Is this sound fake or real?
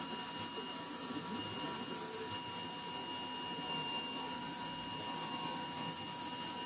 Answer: real